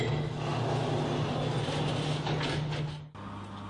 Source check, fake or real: real